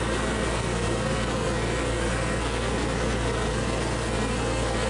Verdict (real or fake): fake